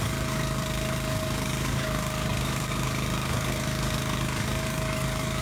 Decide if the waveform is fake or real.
fake